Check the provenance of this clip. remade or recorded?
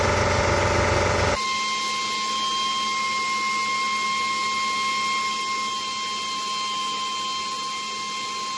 recorded